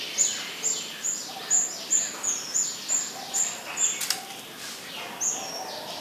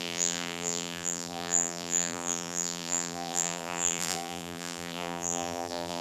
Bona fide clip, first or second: first